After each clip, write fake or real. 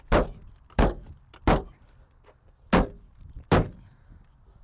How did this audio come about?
real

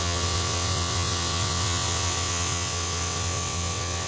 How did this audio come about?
fake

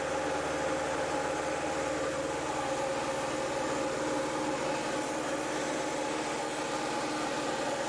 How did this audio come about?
real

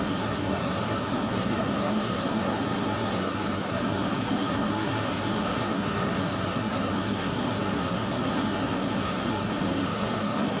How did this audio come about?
fake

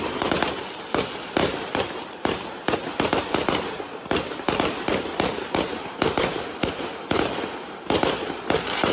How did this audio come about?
fake